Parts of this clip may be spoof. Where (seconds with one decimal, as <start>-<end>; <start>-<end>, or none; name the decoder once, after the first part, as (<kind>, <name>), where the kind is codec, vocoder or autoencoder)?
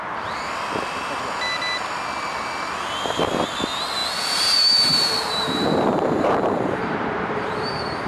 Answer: 4.0-8.1 (vocoder, BigVGAN v2)